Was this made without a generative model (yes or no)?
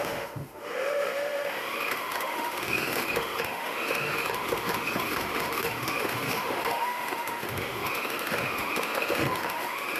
no